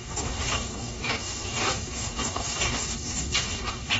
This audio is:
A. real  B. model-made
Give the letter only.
B